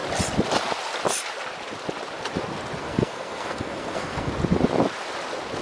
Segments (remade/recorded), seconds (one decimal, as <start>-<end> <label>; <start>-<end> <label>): 0.0-2.8 recorded; 2.8-4.3 remade; 4.3-5.6 recorded